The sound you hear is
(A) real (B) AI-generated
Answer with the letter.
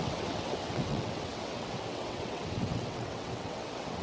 B